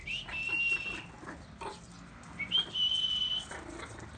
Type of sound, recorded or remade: recorded